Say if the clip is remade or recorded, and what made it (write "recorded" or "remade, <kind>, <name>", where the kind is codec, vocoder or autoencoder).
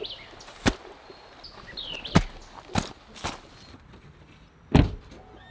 recorded